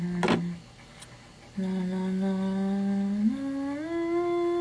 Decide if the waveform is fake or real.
real